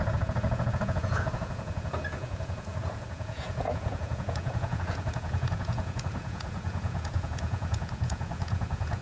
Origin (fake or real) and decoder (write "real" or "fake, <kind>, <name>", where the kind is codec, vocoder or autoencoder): fake, vocoder, Vocos